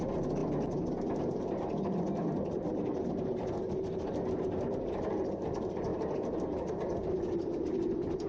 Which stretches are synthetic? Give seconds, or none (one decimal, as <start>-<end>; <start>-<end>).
none